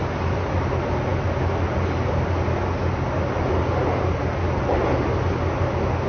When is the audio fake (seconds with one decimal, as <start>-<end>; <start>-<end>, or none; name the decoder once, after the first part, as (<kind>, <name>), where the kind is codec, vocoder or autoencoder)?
none